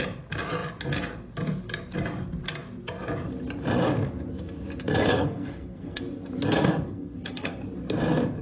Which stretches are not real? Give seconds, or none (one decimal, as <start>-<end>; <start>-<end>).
5.1-6.0; 6.6-7.6